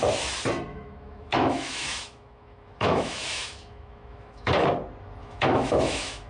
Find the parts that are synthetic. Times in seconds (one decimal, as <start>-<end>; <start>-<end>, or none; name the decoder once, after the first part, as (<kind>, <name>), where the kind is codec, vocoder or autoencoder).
0.7-4.5 (autoencoder, DAC-VAE); 5.2-6.3